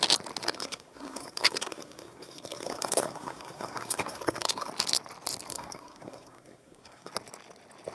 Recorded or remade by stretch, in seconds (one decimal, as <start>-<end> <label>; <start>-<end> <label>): 0.0-0.4 recorded; 0.4-4.7 remade; 4.7-5.5 recorded; 5.5-7.1 remade; 7.1-7.9 recorded